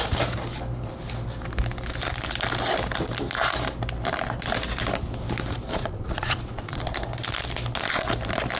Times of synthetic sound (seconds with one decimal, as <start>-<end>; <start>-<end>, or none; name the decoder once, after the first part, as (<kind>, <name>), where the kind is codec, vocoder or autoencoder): 5.7-6.8 (vocoder, Vocos)